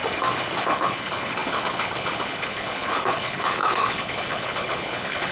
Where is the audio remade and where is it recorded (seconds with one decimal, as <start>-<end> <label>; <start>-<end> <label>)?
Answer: 0.0-0.6 recorded; 0.6-5.3 remade